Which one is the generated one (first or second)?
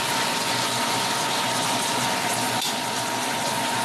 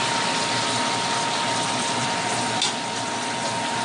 first